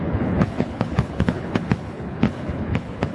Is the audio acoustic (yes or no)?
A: no